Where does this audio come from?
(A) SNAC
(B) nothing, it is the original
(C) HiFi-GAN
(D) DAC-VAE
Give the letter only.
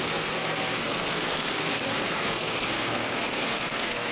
A